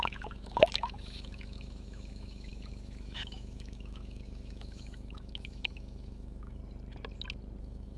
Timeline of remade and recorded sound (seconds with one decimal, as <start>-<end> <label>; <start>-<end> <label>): 0.0-6.6 remade; 6.6-7.6 recorded; 7.6-8.0 remade